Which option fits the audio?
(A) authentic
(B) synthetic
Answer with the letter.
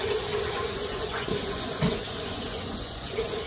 B